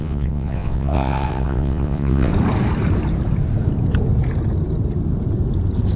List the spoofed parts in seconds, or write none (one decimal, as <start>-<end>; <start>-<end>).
0.0-2.3